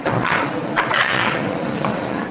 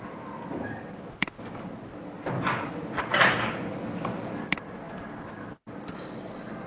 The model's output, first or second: first